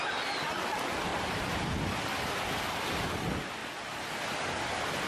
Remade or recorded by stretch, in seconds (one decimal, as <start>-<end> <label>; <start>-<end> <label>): 0.0-5.1 recorded